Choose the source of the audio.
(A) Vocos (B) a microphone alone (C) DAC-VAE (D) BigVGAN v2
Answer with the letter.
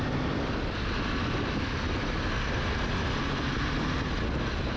B